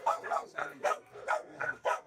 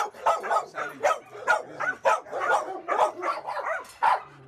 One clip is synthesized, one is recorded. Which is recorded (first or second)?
second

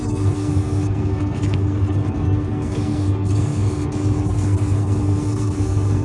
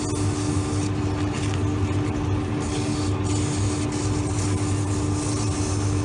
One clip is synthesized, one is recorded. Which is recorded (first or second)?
second